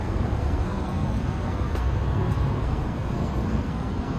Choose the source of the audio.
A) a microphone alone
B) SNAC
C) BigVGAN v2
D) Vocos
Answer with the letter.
B